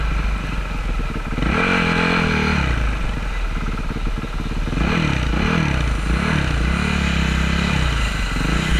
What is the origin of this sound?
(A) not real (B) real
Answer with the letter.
B